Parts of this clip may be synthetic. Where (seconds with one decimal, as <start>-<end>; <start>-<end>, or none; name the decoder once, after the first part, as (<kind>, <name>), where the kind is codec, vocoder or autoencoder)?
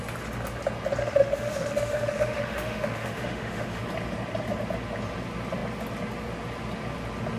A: 1.0-3.8 (autoencoder, DAC-VAE)